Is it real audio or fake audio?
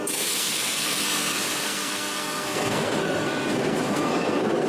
fake